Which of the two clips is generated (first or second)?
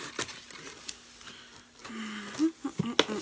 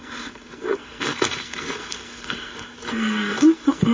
second